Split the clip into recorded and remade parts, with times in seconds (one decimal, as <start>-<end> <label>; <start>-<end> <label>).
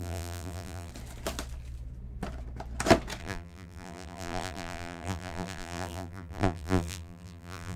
0.0-0.9 remade; 0.9-3.2 recorded; 3.2-7.8 remade